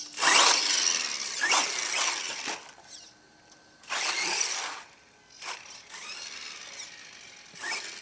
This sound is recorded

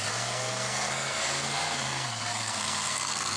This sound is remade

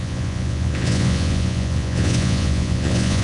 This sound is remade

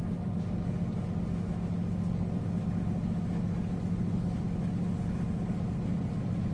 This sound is recorded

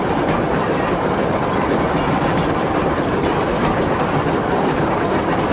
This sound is remade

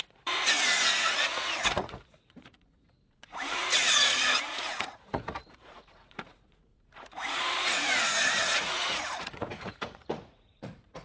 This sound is remade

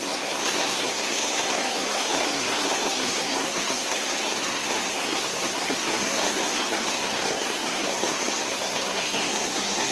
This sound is remade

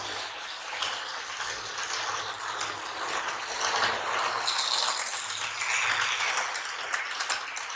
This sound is recorded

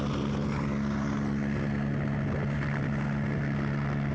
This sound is recorded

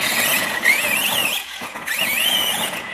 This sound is remade